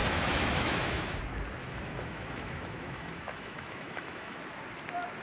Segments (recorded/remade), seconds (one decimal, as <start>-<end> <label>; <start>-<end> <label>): 0.0-1.2 remade; 1.2-1.6 recorded; 1.6-4.4 remade; 4.4-5.2 recorded

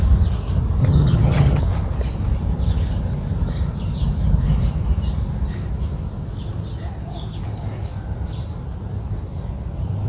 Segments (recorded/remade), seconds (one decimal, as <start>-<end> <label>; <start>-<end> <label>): 0.0-0.8 recorded; 0.8-1.6 remade; 1.6-10.1 recorded